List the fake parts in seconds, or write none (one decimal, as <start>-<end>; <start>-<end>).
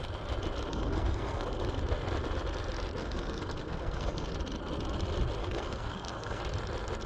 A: 0.7-1.8; 3.0-4.3; 5.4-6.4